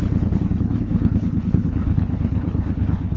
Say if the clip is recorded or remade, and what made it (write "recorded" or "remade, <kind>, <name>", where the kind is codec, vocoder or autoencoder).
remade, codec, HILCodec